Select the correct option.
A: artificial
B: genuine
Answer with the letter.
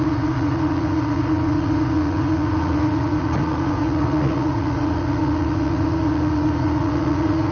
A